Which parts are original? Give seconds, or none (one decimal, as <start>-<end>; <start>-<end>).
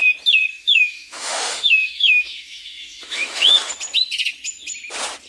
0.0-0.5; 3.7-5.3